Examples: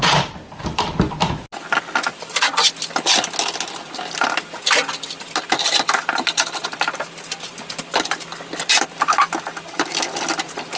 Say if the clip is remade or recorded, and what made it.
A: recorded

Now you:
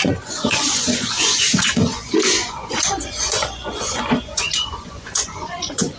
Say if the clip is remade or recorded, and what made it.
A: remade, vocoder, Vocos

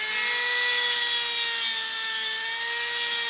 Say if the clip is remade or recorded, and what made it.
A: recorded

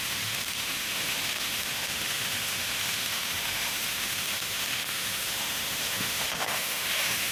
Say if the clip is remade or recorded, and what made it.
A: remade, autoencoder, DAC-VAE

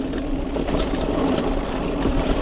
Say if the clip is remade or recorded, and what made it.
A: recorded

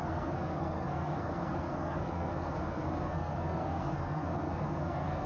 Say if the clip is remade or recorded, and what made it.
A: remade, codec, SNAC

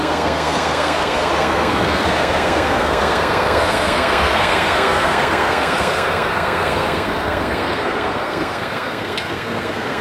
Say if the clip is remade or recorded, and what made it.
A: remade, codec, SNAC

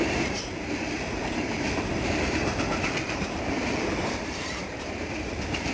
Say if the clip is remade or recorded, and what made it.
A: remade, vocoder, BigVGAN v2